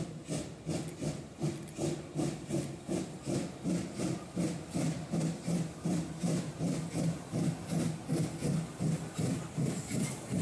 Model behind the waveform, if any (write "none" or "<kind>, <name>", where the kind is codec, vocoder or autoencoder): none